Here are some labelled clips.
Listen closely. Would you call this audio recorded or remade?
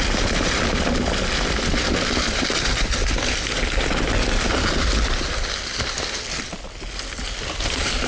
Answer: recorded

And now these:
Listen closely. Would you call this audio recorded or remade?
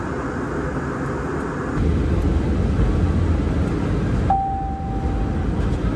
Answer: recorded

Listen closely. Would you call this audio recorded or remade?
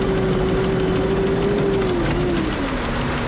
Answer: recorded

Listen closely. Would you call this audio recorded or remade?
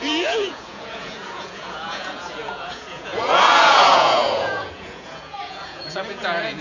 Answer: remade